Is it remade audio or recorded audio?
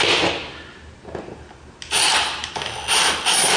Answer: recorded